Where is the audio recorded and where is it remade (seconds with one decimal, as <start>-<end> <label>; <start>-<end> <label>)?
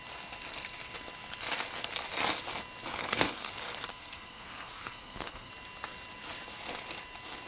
0.0-2.9 recorded; 2.9-3.5 remade; 3.5-3.9 recorded; 3.9-5.5 remade; 5.5-7.5 recorded